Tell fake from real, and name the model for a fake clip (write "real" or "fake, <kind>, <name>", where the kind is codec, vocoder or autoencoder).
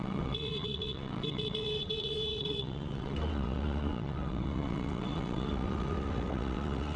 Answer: fake, vocoder, WaveNeXt